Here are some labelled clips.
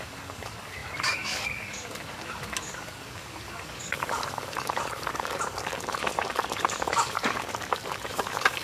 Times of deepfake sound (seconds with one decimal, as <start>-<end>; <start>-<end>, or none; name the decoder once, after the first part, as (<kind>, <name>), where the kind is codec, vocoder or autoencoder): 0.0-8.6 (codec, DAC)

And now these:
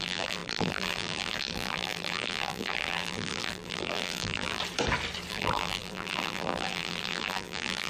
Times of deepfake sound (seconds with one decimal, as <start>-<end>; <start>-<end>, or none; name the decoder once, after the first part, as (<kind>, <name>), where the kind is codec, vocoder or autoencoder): 0.0-4.6 (vocoder, BigVGAN v2); 5.3-7.9

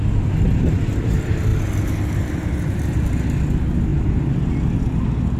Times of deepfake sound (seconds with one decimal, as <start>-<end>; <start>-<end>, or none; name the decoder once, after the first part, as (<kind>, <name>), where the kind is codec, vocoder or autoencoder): none

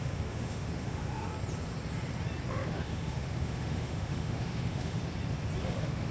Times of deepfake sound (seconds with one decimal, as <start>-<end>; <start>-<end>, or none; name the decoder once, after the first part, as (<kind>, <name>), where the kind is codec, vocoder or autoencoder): 0.0-1.3 (autoencoder, DAC-VAE); 2.5-5.0; 5.6-6.1

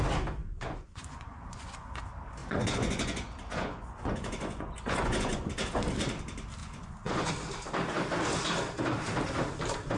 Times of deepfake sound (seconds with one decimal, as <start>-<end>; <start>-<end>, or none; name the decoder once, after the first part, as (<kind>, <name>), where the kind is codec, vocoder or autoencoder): 0.4-2.0 (vocoder, Vocos); 2.4-5.5; 6.6-7.3

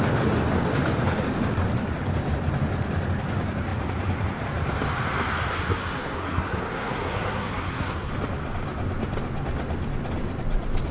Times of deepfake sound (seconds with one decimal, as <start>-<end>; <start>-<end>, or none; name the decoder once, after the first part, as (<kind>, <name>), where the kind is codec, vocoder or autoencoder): 5.5-8.1 (codec, SNAC)